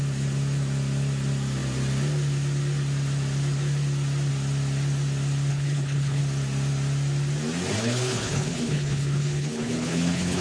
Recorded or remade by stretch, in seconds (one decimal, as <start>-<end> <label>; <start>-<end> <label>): 0.0-5.5 recorded; 5.5-6.2 remade; 6.2-7.8 recorded; 7.8-10.4 remade